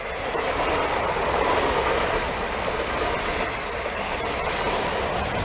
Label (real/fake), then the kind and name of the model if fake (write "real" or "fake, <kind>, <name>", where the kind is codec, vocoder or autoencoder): real